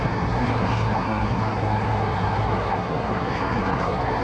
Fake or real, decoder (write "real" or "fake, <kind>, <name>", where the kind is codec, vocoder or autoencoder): fake, codec, SNAC